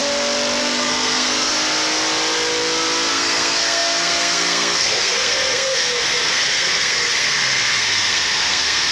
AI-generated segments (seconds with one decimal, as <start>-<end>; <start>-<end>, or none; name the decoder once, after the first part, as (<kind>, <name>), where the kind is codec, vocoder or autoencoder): 0.6-1.5 (codec, SNAC); 3.1-8.9